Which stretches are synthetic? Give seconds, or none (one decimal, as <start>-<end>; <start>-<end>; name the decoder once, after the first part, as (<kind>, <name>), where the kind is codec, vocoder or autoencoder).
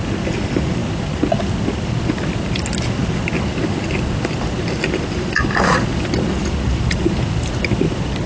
none